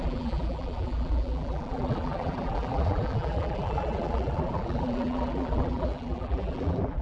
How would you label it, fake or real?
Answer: fake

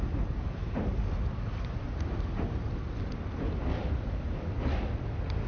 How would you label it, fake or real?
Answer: real